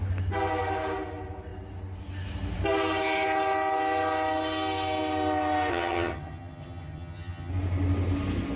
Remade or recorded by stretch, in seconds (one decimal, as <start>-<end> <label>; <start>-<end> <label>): 0.0-5.7 recorded; 5.7-7.5 remade; 7.5-8.6 recorded